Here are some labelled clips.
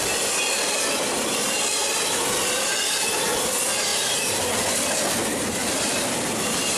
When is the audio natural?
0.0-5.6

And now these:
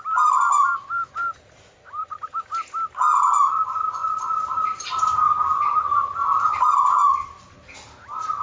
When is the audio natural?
0.0-4.0; 4.9-5.9; 6.7-8.4